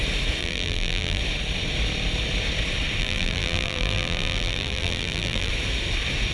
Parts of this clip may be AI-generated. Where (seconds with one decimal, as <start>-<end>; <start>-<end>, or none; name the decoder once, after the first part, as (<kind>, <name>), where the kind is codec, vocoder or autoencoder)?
0.4-1.2 (vocoder, BigVGAN v2); 3.0-5.5